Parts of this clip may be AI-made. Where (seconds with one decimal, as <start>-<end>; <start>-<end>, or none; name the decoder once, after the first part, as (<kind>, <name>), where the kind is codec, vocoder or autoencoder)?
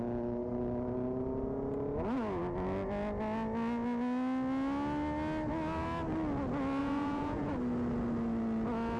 6.8-7.6 (vocoder, Vocos)